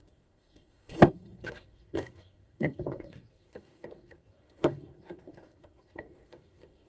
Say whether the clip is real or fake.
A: fake